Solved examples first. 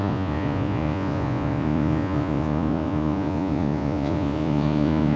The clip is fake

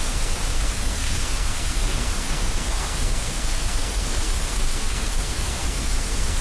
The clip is fake